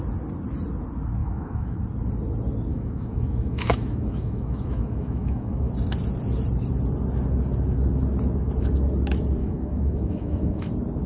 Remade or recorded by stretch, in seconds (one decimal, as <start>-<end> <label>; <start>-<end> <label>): 0.0-1.2 recorded; 1.2-1.8 remade; 1.8-2.7 recorded; 2.7-5.7 remade; 5.7-9.4 recorded; 9.4-10.7 remade; 10.7-11.1 recorded